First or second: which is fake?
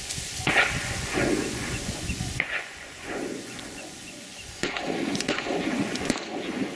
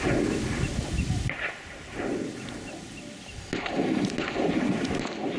first